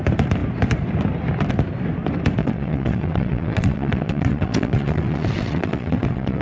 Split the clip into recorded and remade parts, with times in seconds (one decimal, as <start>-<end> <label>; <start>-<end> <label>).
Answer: 0.0-2.4 recorded; 2.4-6.4 remade